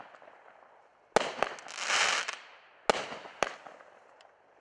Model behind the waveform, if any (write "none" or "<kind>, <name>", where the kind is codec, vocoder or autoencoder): none